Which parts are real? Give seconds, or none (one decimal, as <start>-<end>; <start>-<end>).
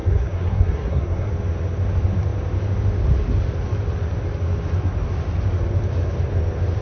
1.3-6.8